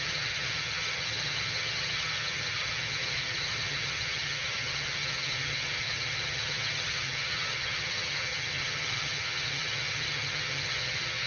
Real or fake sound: fake